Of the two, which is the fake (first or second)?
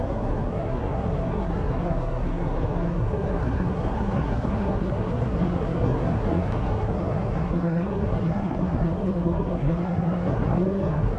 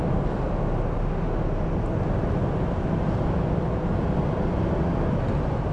first